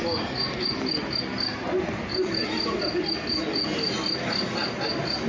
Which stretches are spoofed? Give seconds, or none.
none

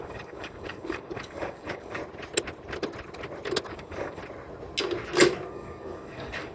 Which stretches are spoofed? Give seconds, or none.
0.0-2.0 (codec, DAC); 3.7-4.2; 5.5-6.5

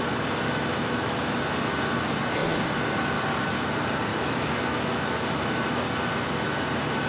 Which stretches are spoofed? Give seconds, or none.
0.7-1.4 (autoencoder, DAC-VAE); 4.1-5.0

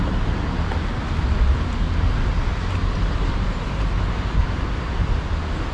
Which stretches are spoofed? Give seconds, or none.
2.5-5.2 (vocoder, BigVGAN v2)